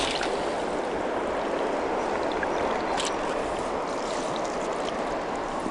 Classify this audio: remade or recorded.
recorded